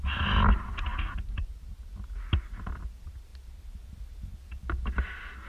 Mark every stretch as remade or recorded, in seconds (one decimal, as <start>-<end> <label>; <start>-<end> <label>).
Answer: 0.0-0.9 recorded; 0.9-1.9 remade; 1.9-5.5 recorded